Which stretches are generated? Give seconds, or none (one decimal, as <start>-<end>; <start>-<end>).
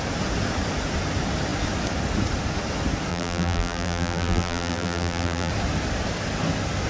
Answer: 3.1-5.5